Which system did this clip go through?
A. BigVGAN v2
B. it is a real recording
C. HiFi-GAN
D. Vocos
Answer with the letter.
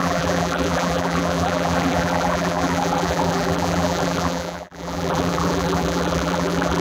A